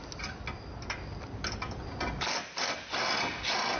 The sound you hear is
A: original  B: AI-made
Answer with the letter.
A